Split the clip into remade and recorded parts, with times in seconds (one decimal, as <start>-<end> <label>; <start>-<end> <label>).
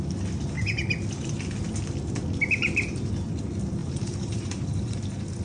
0.0-2.6 recorded; 2.6-3.1 remade; 3.1-3.8 recorded; 3.8-5.0 remade; 5.0-5.4 recorded